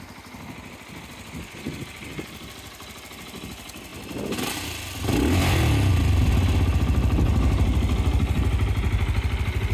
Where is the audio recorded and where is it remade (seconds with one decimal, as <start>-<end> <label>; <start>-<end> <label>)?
0.0-9.7 recorded